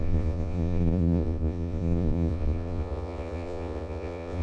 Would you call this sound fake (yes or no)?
yes